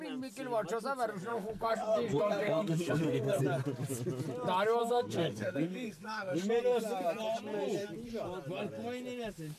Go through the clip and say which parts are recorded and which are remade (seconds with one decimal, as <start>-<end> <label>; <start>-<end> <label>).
0.0-1.3 recorded; 1.3-3.4 remade; 3.4-4.8 recorded; 4.8-6.5 remade; 6.5-9.6 recorded